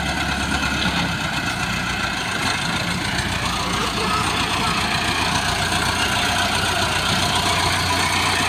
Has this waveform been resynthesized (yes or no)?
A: no